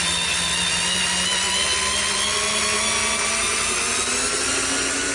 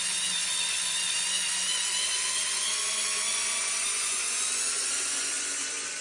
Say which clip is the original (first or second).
first